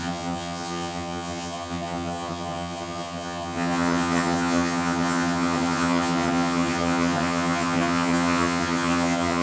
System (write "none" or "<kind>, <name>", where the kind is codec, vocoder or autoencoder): vocoder, HiFi-GAN